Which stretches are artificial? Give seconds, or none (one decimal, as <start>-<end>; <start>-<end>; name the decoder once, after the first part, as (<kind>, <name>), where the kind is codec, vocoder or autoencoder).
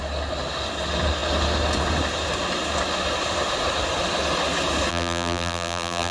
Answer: 4.9-6.1 (vocoder, BigVGAN v2)